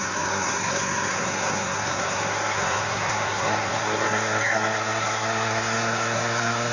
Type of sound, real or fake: fake